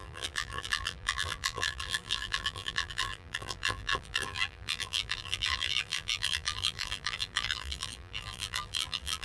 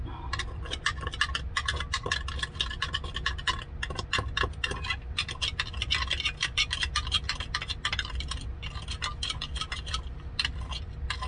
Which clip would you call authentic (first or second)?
second